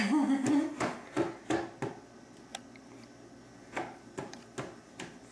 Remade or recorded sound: recorded